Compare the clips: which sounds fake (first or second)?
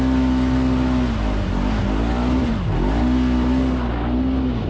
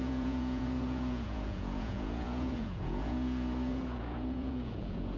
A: second